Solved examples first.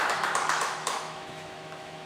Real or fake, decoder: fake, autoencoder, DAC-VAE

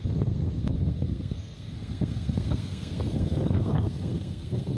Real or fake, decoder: fake, codec, SNAC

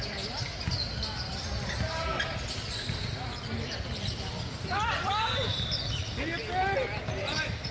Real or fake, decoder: real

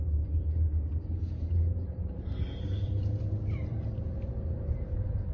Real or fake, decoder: fake, vocoder, BigVGAN v2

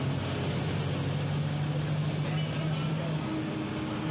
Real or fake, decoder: real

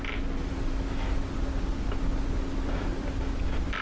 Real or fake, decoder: real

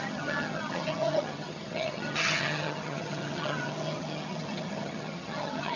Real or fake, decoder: fake, vocoder, HiFi-GAN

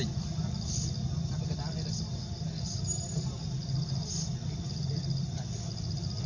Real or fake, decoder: real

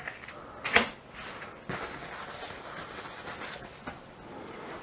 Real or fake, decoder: real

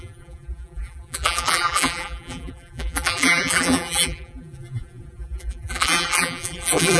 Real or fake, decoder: fake, vocoder, BigVGAN v2